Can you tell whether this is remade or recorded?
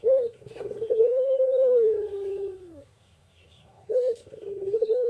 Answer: remade